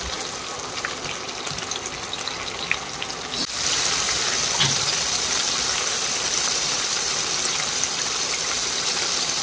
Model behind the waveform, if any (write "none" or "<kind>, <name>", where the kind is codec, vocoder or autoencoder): none